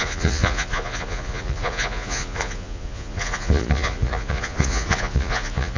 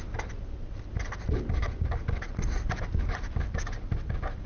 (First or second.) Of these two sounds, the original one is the second